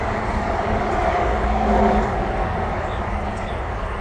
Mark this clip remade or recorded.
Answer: remade